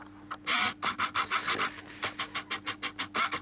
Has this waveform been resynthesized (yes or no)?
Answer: no